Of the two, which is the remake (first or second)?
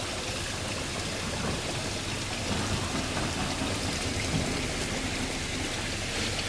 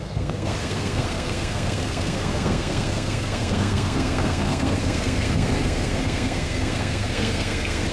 second